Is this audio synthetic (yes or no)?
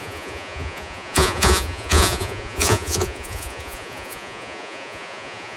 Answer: yes